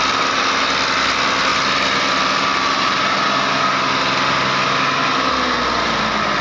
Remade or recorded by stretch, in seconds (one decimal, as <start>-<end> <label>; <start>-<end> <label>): 0.0-6.4 recorded